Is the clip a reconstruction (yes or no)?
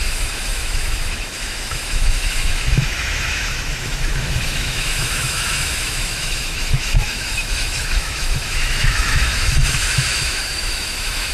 yes